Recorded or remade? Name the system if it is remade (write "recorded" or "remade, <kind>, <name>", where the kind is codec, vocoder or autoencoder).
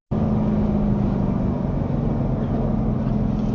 recorded